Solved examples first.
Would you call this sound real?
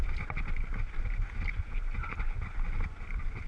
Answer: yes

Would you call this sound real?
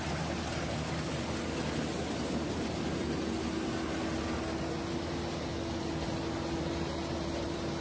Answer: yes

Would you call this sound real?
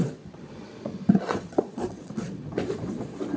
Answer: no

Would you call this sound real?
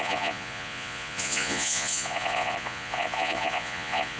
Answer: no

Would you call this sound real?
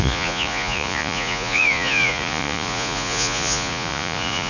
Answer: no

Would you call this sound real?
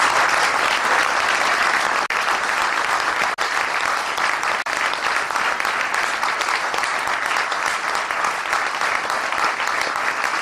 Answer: yes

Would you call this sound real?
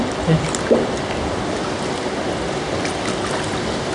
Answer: yes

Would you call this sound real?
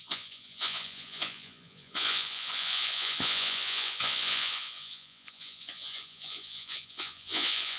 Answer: no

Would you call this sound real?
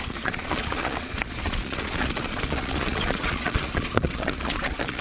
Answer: no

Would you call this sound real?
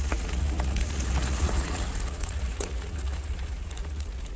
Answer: no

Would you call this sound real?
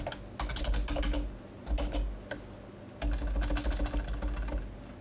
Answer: yes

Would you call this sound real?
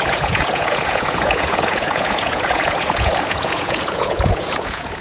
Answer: no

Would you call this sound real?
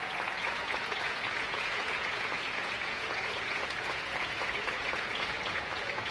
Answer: no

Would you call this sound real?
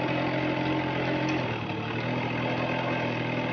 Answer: yes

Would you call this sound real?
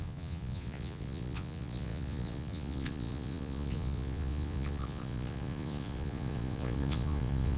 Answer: no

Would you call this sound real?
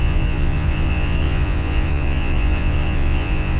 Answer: no